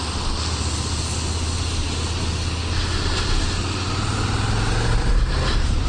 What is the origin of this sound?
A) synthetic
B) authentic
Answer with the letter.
B